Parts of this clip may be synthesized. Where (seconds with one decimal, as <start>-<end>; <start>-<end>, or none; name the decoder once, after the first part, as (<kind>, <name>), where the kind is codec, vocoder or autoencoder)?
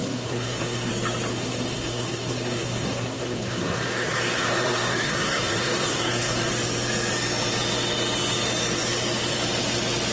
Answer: 0.0-0.9 (codec, SNAC); 1.3-6.5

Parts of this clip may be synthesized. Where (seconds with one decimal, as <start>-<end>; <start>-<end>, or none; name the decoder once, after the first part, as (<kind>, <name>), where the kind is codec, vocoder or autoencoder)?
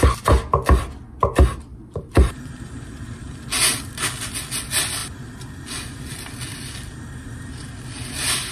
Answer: 1.7-3.3 (vocoder, BigVGAN v2)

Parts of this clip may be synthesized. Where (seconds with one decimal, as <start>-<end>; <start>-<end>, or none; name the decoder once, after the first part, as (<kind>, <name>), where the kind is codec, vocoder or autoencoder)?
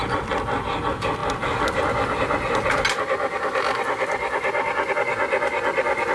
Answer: none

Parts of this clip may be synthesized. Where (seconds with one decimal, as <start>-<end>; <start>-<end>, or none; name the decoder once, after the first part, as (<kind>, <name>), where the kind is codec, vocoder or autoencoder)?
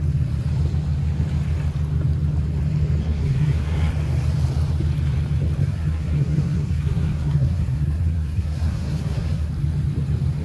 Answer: 3.0-3.9 (codec, SNAC); 5.6-9.5